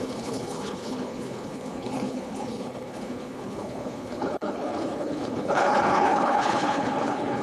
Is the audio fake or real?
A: fake